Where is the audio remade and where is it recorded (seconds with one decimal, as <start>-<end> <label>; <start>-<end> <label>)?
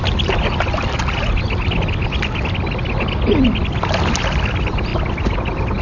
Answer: 0.0-4.9 recorded; 4.9-5.8 remade